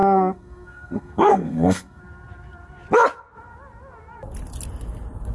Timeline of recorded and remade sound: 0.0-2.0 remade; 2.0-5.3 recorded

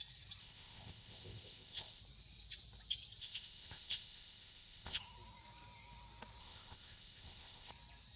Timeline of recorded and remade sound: 0.0-0.4 recorded; 0.4-2.0 remade; 2.0-3.2 recorded; 3.2-5.0 remade; 5.0-6.4 recorded; 6.4-7.7 remade; 7.7-8.2 recorded

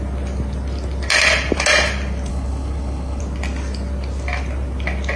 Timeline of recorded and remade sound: 0.0-2.3 recorded; 2.3-3.2 remade; 3.2-5.2 recorded

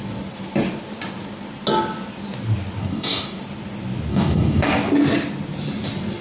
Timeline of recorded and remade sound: 0.0-2.8 recorded; 2.8-3.4 remade; 3.4-4.1 recorded; 4.1-4.7 remade; 4.7-6.2 recorded

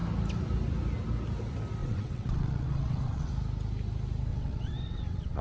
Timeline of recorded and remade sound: 0.0-1.8 recorded; 1.8-3.3 remade; 3.3-4.3 recorded; 4.3-5.4 remade

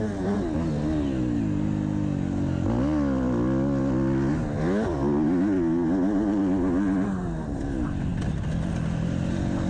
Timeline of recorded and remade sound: 0.0-9.7 recorded

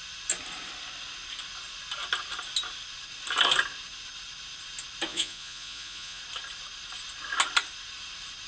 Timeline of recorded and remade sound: 0.0-5.1 recorded; 5.1-6.2 remade; 6.2-8.5 recorded

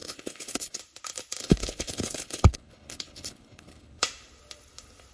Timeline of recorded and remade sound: 0.0-0.8 remade; 0.8-1.4 recorded; 1.4-4.0 remade; 4.0-5.1 recorded